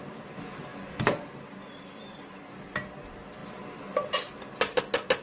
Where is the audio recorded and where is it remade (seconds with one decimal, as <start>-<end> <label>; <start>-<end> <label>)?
0.0-5.2 recorded